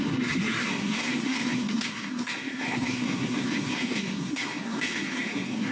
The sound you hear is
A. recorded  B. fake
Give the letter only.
B